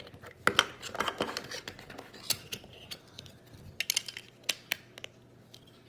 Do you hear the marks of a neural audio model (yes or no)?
no